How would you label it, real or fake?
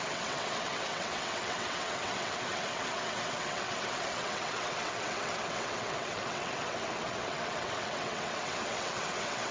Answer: fake